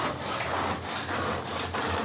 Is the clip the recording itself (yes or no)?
yes